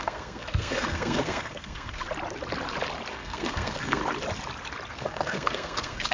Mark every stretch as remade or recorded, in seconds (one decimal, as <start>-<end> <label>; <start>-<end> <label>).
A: 0.0-2.0 remade; 2.0-3.1 recorded; 3.1-4.0 remade; 4.0-4.9 recorded; 4.9-6.1 remade